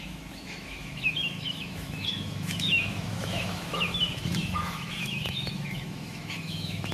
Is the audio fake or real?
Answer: fake